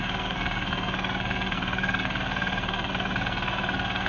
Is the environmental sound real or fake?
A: fake